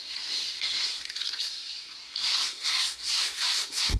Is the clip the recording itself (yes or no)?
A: no